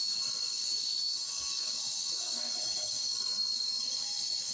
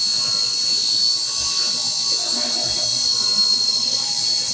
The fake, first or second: first